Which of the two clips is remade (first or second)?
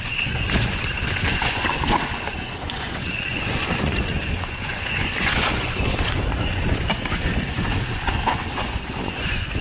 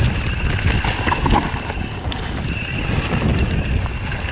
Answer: first